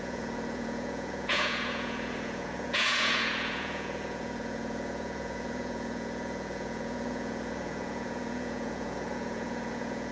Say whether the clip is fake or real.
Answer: fake